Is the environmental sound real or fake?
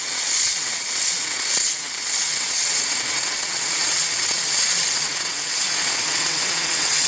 fake